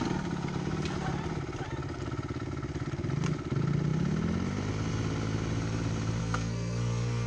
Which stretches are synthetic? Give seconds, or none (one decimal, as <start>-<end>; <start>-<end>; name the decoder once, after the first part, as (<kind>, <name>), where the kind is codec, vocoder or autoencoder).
6.2-7.3 (codec, SNAC)